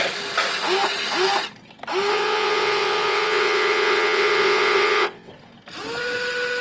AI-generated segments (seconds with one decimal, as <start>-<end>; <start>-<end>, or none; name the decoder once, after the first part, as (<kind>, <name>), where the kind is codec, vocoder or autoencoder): 2.1-5.3 (vocoder, WaveNeXt)